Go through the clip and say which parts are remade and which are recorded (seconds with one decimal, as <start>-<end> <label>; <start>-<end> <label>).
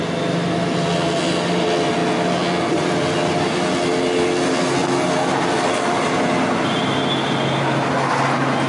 0.0-8.7 recorded